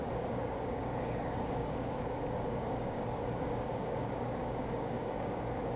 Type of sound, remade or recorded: remade